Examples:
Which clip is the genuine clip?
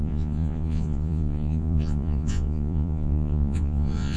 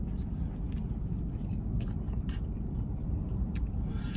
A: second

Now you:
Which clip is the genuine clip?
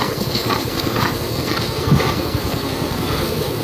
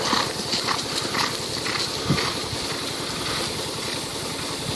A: second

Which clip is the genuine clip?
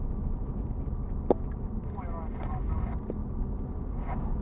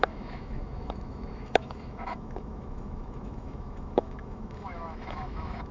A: first